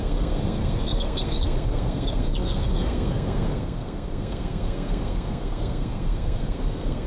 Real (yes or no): no